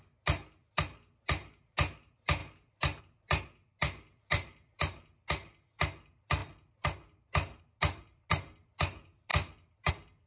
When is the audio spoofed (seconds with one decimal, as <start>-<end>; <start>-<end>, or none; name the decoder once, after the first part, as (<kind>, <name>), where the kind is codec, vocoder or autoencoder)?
none